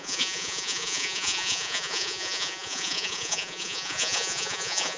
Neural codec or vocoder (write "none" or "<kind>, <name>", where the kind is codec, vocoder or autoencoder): vocoder, Vocos